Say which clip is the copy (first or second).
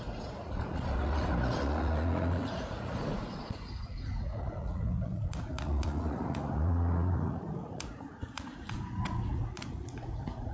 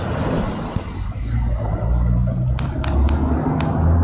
first